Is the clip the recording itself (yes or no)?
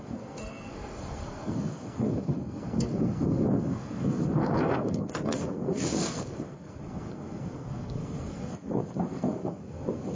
no